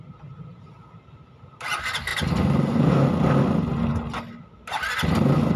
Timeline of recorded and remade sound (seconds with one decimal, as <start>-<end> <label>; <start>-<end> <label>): 0.0-5.6 recorded